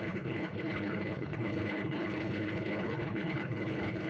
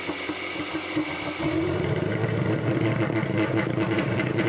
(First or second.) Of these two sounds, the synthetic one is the first